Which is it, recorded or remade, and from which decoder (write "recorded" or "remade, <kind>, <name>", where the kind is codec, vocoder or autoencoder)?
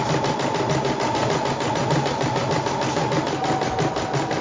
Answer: recorded